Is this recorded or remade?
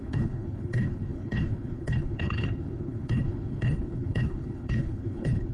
remade